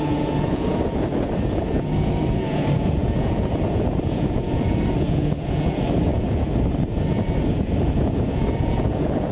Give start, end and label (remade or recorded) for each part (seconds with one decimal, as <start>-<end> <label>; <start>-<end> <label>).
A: 0.0-9.3 remade